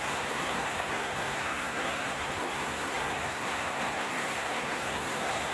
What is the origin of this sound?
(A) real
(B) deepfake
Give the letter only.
B